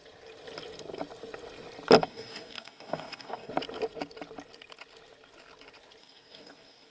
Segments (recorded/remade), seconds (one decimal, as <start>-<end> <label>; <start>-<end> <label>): 0.0-2.0 recorded; 2.0-3.5 remade; 3.5-6.0 recorded; 6.0-6.9 remade